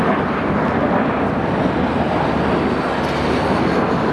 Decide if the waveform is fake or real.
real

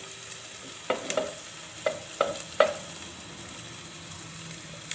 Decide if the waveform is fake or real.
real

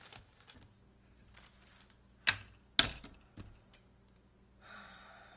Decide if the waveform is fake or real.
real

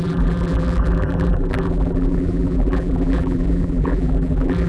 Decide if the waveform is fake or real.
fake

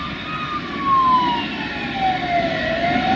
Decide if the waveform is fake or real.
real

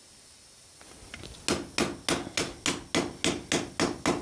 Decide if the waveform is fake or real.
real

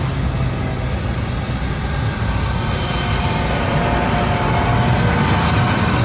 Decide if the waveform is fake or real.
real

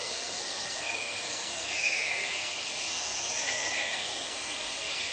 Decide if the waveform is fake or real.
fake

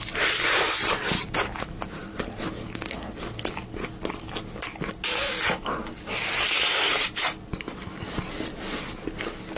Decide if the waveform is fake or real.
real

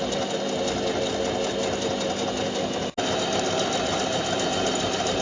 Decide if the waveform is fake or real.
real